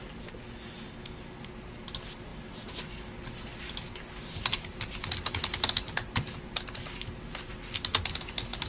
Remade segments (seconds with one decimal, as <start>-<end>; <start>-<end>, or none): none